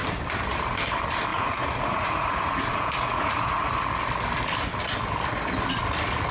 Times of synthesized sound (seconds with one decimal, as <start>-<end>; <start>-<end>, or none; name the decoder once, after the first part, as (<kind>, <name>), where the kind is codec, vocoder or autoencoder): 1.3-3.8 (vocoder, Vocos)